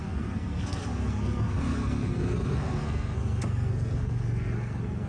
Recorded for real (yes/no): no